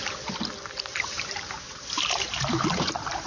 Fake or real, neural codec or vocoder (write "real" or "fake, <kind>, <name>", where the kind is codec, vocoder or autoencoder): fake, vocoder, BigVGAN v2